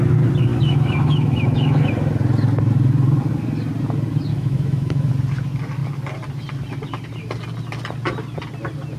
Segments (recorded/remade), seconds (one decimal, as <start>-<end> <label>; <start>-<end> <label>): 0.0-0.5 recorded; 0.5-1.9 remade; 1.9-4.3 recorded; 4.3-5.1 remade; 5.1-9.0 recorded